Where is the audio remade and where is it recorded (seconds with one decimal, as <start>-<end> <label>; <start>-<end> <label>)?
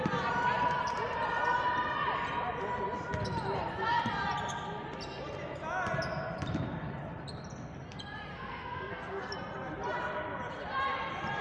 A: 0.0-8.3 recorded; 8.3-9.3 remade; 9.3-11.4 recorded